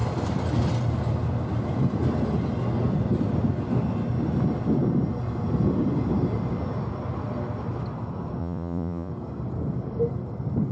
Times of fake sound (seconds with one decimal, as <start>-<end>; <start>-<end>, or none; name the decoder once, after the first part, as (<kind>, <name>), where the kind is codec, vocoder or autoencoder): 8.4-9.1 (vocoder, Vocos)